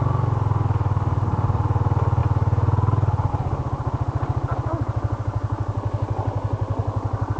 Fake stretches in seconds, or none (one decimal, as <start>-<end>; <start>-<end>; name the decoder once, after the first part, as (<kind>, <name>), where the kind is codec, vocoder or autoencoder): none